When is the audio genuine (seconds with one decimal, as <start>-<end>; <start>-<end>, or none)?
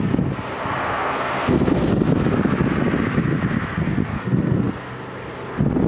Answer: 0.0-0.8; 1.9-4.1; 4.9-5.9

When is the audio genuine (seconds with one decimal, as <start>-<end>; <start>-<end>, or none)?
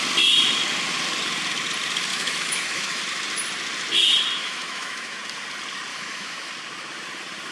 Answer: 0.0-2.1; 3.0-4.4; 5.2-5.9; 6.5-7.5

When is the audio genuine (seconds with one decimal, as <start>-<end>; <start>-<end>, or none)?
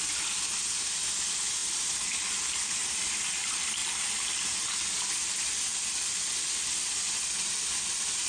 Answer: 0.0-8.3